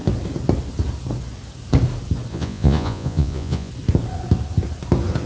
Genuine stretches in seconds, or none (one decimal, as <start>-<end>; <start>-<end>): 0.0-2.3; 3.7-5.3